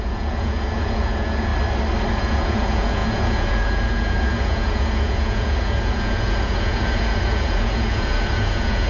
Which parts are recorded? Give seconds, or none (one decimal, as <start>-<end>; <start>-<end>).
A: 1.5-2.1